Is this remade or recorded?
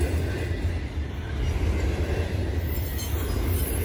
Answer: recorded